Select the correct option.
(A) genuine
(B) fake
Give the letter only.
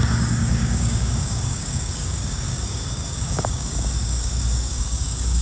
B